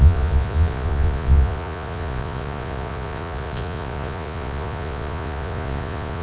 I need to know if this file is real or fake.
fake